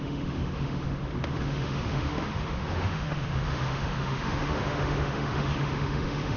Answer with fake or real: fake